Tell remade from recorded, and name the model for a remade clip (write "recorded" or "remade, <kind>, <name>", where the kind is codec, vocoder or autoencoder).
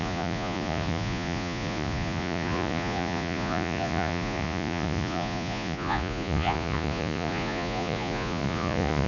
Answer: remade, vocoder, Vocos